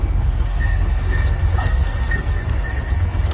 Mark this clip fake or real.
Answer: fake